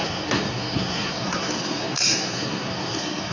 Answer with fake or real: fake